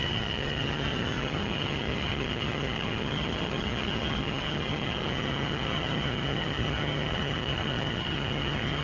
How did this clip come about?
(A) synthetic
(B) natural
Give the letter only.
A